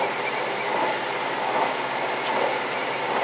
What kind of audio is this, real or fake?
real